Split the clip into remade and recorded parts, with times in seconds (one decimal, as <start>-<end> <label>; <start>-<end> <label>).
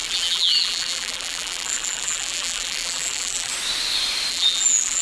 0.0-3.5 remade; 3.5-4.3 recorded; 4.3-5.0 remade